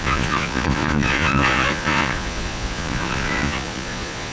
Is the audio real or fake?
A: fake